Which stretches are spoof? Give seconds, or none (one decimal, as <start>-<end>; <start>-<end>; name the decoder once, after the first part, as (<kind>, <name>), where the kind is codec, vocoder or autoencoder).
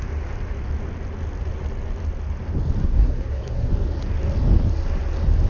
2.8-3.7 (codec, SNAC)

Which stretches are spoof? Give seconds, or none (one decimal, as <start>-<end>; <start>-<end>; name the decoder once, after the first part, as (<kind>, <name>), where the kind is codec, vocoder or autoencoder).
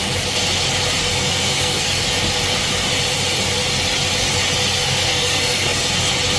1.1-2.1 (codec, SNAC); 4.6-6.0